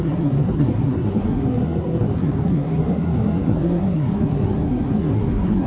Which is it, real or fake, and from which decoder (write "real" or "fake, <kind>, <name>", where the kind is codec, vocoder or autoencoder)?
fake, codec, SNAC